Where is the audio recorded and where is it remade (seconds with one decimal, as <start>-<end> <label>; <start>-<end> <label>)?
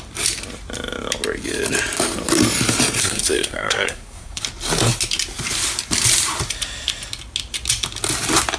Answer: 0.0-3.0 recorded; 3.0-4.4 remade; 4.4-8.6 recorded